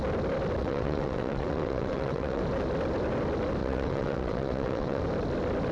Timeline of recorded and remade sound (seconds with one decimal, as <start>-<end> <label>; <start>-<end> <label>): 0.0-0.6 recorded; 0.6-2.4 remade; 2.4-3.6 recorded; 3.6-5.0 remade; 5.0-5.7 recorded